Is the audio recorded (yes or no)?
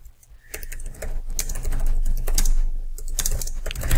yes